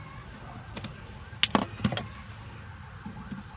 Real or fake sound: real